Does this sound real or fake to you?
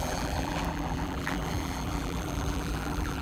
fake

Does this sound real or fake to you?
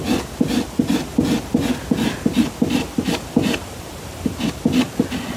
real